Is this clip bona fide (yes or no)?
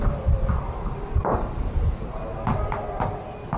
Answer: yes